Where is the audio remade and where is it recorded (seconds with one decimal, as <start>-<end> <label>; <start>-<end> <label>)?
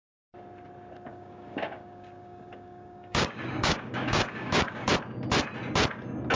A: 0.0-1.1 recorded; 1.1-4.9 remade; 4.9-6.4 recorded